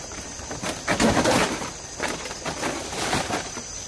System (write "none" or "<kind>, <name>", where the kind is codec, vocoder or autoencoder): none